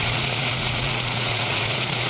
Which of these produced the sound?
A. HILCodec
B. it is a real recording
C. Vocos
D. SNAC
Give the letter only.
C